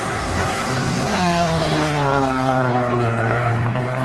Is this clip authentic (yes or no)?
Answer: no